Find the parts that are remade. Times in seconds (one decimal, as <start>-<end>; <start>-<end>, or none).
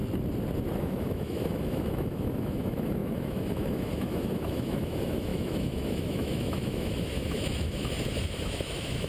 0.8-9.1